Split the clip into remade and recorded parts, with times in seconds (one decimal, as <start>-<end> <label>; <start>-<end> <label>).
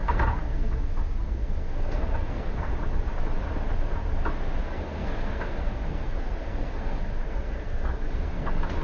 0.0-2.7 remade; 2.7-4.6 recorded; 4.6-8.8 remade